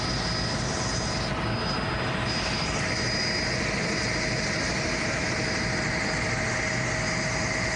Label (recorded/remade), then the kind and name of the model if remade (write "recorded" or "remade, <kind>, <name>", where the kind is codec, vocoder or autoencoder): recorded